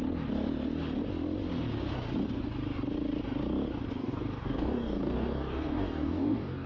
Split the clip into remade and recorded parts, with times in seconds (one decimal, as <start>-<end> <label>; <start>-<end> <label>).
0.0-4.0 recorded; 4.0-6.7 remade